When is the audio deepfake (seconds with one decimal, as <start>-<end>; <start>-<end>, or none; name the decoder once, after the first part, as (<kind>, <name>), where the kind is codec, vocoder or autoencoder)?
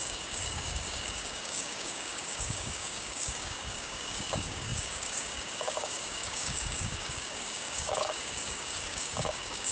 0.0-9.7 (codec, DAC)